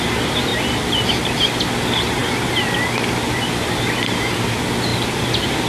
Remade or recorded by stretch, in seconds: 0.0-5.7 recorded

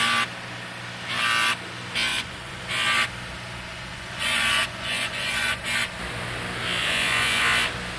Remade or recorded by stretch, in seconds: 0.0-2.1 recorded; 2.1-2.6 remade; 2.6-3.7 recorded; 3.7-5.6 remade; 5.6-6.8 recorded; 6.8-7.4 remade; 7.4-8.0 recorded

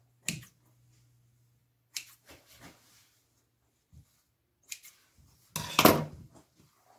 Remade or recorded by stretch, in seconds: 0.0-1.6 recorded; 1.6-2.6 remade; 2.6-7.0 recorded

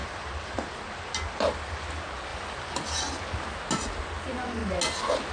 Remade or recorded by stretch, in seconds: 0.0-1.1 remade; 1.1-2.3 recorded; 2.3-3.2 remade; 3.2-5.3 recorded

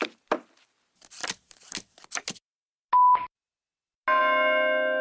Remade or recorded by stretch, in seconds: 0.0-5.0 recorded

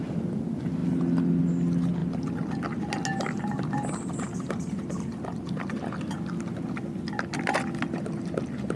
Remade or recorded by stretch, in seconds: 0.0-8.8 recorded